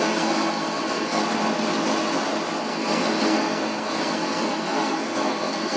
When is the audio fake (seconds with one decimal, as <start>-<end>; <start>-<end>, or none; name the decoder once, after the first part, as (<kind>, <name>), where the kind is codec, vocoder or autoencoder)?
0.0-1.2 (codec, SNAC); 2.6-5.8